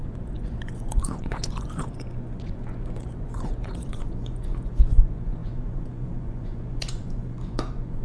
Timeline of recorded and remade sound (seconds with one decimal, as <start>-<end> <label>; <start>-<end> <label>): 0.0-8.0 remade